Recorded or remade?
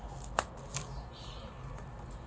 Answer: recorded